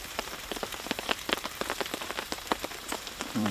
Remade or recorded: remade